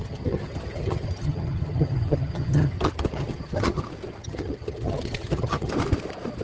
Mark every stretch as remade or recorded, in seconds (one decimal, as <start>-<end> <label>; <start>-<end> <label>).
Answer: 0.0-3.8 remade; 3.8-4.2 recorded; 4.2-5.7 remade; 5.7-6.4 recorded